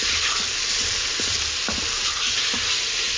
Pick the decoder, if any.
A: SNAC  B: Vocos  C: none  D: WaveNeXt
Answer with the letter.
C